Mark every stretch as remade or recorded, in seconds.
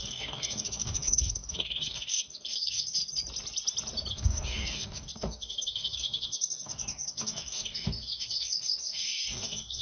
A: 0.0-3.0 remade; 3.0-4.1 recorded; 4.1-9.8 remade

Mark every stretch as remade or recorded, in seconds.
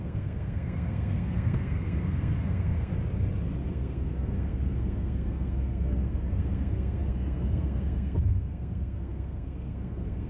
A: 0.0-2.9 remade; 2.9-3.7 recorded; 3.7-10.3 remade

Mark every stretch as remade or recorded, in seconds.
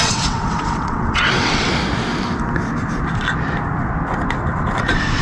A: 0.0-1.7 remade; 1.7-4.8 recorded; 4.8-5.2 remade